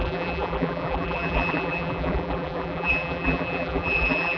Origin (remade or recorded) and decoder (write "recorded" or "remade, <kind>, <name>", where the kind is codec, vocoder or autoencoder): remade, vocoder, BigVGAN v2